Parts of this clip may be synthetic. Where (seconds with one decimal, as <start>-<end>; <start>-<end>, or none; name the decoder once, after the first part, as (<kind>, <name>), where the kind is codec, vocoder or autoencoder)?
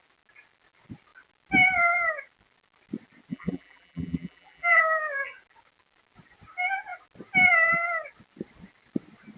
3.3-4.8 (vocoder, BigVGAN v2)